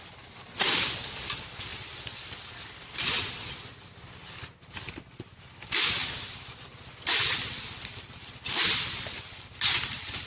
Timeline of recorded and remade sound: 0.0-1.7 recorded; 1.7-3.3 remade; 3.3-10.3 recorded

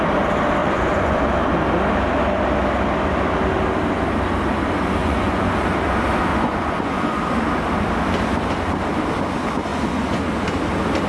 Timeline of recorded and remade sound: 0.0-0.6 recorded; 0.6-1.2 remade; 1.2-5.0 recorded; 5.0-5.5 remade; 5.5-6.3 recorded; 6.3-7.2 remade; 7.2-9.7 recorded; 9.7-10.2 remade; 10.2-11.1 recorded

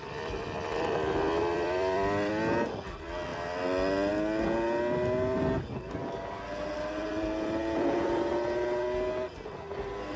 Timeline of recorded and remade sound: 0.0-1.5 recorded; 1.5-2.3 remade; 2.3-7.1 recorded; 7.1-8.3 remade; 8.3-10.2 recorded